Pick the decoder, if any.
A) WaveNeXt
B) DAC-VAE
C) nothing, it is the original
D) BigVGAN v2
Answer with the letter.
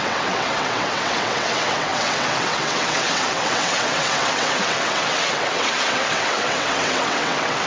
A